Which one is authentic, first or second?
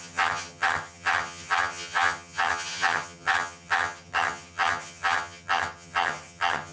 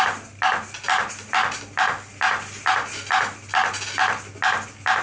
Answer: second